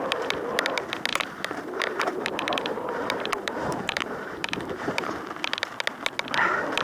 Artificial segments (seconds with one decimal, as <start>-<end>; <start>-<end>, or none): 1.1-5.2